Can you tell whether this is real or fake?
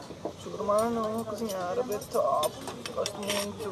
real